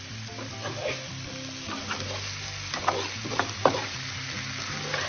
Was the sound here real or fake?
real